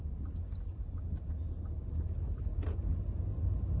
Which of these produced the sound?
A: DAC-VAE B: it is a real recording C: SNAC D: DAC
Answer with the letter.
B